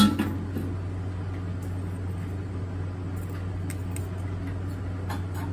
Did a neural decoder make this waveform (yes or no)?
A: no